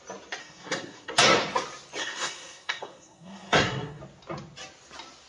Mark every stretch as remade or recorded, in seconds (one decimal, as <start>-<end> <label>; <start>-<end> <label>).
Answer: 0.0-0.4 recorded; 0.4-1.1 remade; 1.1-2.0 recorded; 2.0-4.0 remade; 4.0-5.3 recorded